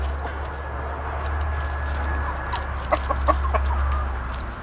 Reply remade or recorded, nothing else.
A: recorded